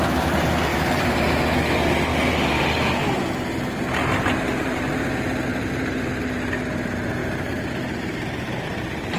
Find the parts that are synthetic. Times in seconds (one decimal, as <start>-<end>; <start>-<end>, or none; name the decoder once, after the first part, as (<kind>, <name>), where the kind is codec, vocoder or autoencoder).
0.7-1.4 (vocoder, BigVGAN v2); 2.1-4.9; 5.5-6.1; 7.2-9.2